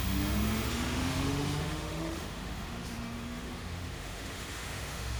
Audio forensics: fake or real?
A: fake